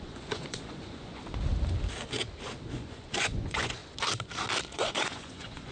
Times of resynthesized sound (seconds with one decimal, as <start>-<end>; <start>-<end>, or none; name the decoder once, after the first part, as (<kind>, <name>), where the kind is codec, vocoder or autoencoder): 0.0-1.2 (vocoder, Vocos); 2.7-3.8; 4.7-5.7

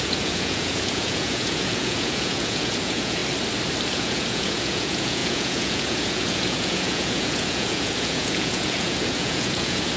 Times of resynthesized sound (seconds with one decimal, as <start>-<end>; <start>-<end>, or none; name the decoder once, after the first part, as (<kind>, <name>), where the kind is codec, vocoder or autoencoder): 0.0-3.2 (vocoder, Vocos); 3.9-10.0

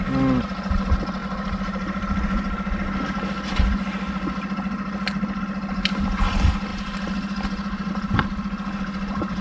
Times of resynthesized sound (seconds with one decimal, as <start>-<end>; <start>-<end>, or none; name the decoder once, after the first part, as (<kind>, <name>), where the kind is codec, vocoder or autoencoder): none

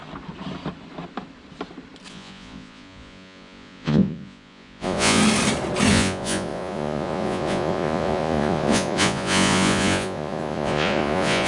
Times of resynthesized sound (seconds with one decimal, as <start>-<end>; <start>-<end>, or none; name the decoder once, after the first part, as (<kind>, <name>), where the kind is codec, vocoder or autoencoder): 2.1-5.2 (vocoder, Vocos); 5.9-11.5

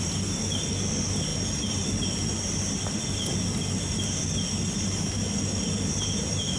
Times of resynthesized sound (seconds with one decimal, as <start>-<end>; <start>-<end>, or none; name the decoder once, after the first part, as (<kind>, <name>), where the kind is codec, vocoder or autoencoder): none

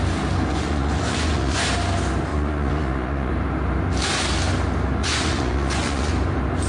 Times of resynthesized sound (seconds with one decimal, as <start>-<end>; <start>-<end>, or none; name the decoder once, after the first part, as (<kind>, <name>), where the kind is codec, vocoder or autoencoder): 0.5-1.6 (vocoder, Vocos); 2.3-3.3; 5.0-6.1

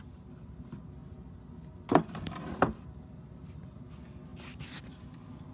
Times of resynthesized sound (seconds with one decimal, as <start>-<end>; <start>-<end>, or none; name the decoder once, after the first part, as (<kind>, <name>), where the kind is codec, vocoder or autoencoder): none